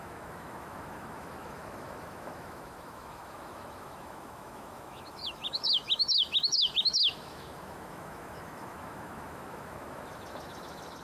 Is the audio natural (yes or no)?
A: no